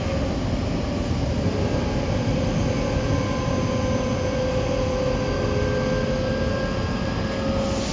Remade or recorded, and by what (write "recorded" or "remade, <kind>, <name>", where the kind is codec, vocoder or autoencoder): recorded